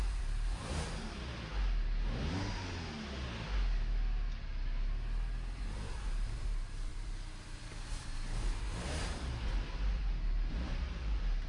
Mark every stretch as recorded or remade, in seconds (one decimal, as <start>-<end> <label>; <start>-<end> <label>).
0.0-1.5 remade; 1.5-5.6 recorded; 5.6-11.5 remade